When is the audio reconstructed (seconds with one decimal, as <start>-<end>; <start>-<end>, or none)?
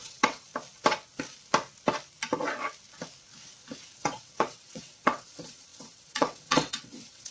0.0-0.5; 4.0-7.3